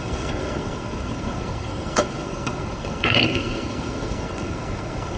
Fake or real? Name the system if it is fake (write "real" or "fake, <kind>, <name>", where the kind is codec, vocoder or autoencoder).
fake, codec, SNAC